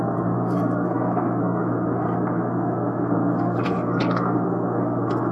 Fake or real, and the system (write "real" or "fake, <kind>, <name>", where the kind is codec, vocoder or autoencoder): fake, codec, SNAC